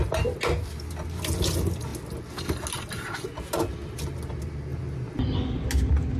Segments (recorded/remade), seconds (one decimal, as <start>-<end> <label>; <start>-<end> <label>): 0.0-6.2 recorded